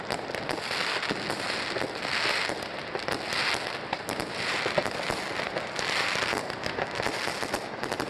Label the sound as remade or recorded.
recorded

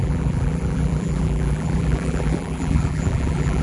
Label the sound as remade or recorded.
remade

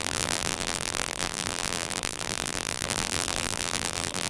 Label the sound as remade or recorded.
remade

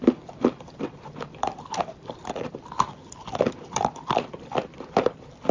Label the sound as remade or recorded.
remade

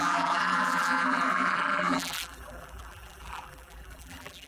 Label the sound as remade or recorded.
remade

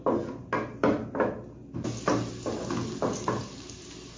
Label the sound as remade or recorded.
recorded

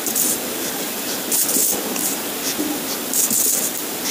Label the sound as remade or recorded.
recorded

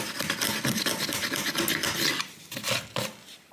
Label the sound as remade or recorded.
recorded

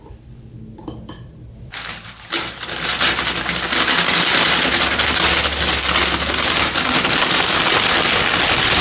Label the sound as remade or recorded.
recorded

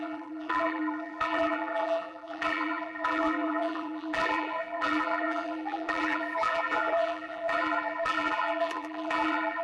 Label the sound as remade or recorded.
remade